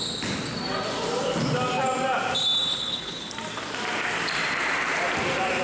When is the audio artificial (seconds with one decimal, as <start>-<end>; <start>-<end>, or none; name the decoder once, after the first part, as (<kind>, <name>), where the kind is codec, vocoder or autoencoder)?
2.7-3.3 (codec, HILCodec)